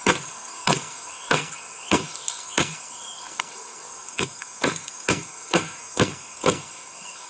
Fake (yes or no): yes